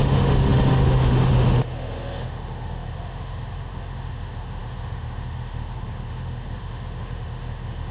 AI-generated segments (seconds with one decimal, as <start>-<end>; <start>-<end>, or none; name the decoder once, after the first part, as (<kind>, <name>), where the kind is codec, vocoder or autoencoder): 0.0-7.9 (autoencoder, DAC-VAE)